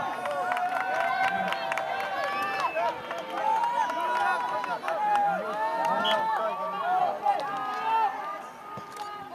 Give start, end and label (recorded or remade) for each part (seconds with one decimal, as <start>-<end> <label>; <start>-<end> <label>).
0.0-9.3 recorded